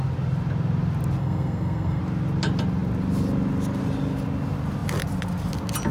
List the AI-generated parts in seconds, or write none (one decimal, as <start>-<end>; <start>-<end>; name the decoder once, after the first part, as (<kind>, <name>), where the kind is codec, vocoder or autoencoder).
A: 1.2-2.0 (codec, SNAC)